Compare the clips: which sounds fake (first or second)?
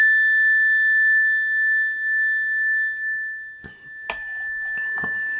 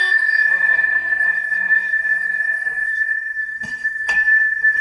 second